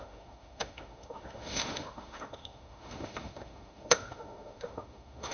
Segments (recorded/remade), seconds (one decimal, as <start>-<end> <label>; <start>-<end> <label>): 0.0-5.3 remade